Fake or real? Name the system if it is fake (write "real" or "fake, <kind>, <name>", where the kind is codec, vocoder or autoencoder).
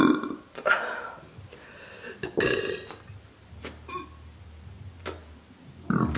real